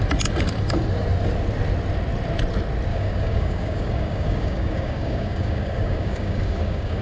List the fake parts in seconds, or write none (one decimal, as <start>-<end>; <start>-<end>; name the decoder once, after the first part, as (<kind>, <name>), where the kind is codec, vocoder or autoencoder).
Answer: 2.9-7.0 (codec, DAC)